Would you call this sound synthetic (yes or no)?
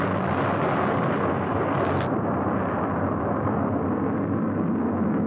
no